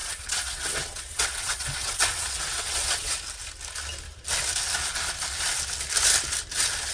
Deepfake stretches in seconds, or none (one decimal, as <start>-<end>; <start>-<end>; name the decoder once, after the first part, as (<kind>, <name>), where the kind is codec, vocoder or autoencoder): 0.0-3.1 (vocoder, WaveNeXt)